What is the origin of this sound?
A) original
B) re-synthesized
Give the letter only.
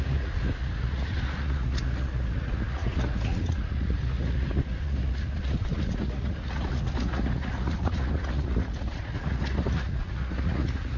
B